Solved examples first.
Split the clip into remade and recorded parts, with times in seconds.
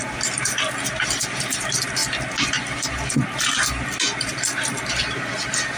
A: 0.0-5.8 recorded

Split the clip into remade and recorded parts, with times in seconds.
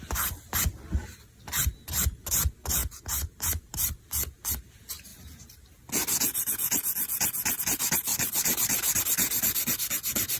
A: 0.0-10.4 recorded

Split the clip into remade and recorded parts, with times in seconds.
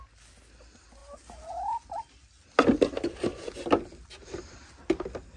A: 0.0-5.4 recorded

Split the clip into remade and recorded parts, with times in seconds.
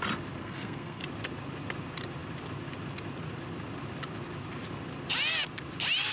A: 0.0-0.4 recorded; 0.4-1.0 remade; 1.0-6.1 recorded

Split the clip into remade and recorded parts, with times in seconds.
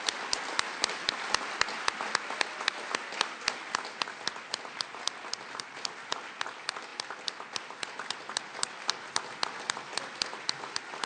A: 0.0-11.1 recorded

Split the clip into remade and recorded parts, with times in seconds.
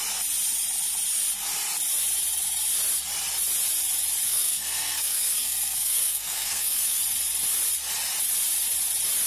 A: 0.0-4.3 recorded; 4.3-7.0 remade; 7.0-9.3 recorded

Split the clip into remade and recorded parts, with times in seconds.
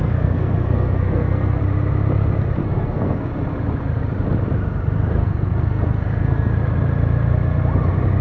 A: 0.0-1.6 remade; 1.6-2.6 recorded; 2.6-3.3 remade; 3.3-5.2 recorded; 5.2-6.5 remade; 6.5-8.2 recorded